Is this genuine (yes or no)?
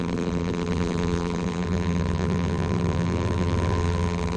no